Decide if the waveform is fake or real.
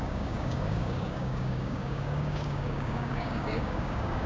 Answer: fake